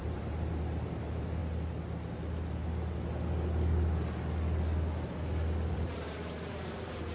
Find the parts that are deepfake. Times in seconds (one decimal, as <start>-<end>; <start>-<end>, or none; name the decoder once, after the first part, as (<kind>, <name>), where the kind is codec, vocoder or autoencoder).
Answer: 0.0-1.4 (vocoder, BigVGAN v2); 5.7-7.1